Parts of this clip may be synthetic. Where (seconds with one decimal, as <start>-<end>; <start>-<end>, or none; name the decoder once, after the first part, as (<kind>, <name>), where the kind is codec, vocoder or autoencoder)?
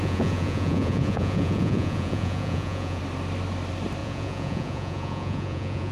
0.0-3.0 (vocoder, Vocos); 4.0-5.9